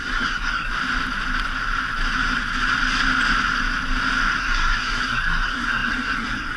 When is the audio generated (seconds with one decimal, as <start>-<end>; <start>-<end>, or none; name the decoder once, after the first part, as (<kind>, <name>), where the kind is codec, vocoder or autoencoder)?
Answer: 0.0-0.7 (codec, SNAC); 4.4-6.6